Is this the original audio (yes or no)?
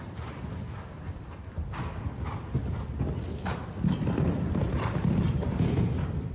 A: yes